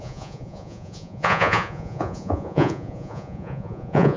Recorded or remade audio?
remade